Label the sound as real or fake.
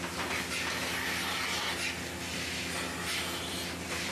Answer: real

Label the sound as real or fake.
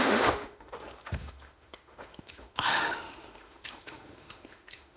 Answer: fake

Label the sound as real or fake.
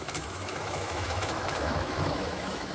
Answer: fake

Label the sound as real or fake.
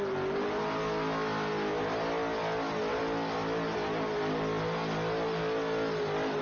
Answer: real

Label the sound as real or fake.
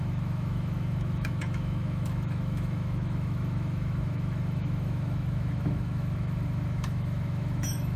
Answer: fake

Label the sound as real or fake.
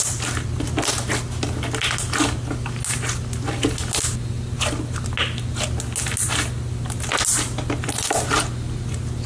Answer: real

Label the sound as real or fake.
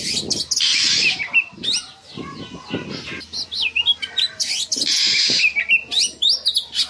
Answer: real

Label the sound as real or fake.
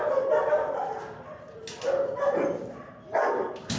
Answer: real